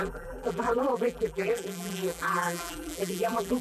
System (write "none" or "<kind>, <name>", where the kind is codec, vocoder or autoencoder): vocoder, BigVGAN v2